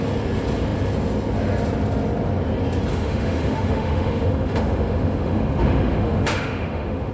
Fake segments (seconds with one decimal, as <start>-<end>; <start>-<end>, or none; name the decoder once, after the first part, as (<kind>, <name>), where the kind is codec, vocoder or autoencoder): 2.9-7.1 (autoencoder, DAC-VAE)